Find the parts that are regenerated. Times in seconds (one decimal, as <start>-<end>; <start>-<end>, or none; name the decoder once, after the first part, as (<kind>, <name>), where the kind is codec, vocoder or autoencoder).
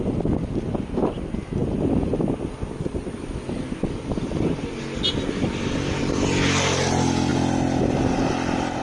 none